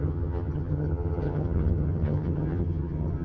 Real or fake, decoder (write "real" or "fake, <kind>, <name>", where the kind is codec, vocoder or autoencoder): fake, vocoder, HiFi-GAN